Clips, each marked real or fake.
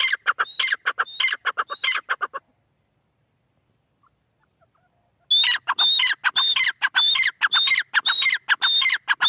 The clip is real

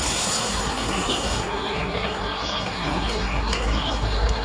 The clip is fake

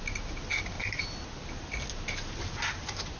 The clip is real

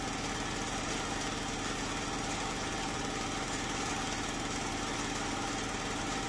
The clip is real